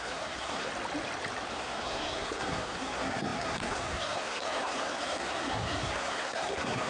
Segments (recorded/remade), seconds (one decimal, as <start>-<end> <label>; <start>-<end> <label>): 0.0-0.7 remade; 0.7-1.5 recorded; 1.5-6.9 remade